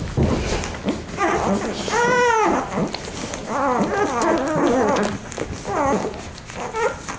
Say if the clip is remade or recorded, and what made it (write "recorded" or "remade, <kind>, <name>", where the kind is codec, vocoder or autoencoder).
recorded